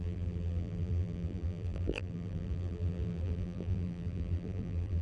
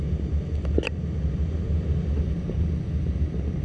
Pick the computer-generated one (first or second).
first